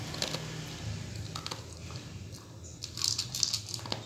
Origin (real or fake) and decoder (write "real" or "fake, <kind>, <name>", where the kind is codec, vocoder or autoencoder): real